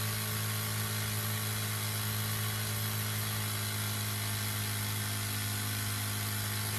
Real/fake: real